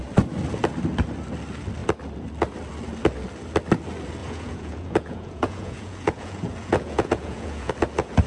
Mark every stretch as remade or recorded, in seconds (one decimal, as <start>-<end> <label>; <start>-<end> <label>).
0.0-4.2 recorded; 4.2-7.7 remade; 7.7-8.3 recorded